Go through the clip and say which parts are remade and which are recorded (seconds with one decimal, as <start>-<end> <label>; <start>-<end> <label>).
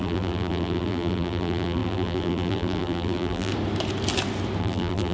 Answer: 0.0-3.5 remade; 3.5-4.6 recorded; 4.6-5.1 remade